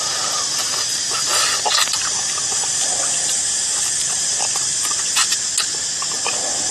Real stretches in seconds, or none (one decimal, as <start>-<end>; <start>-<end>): 1.3-2.5; 5.2-6.3